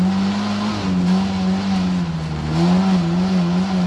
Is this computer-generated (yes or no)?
no